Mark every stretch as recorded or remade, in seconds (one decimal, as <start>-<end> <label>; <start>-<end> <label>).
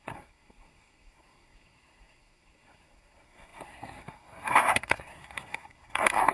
0.0-6.3 remade